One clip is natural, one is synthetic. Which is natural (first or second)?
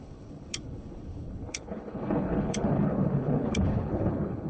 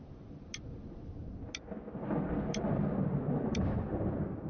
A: second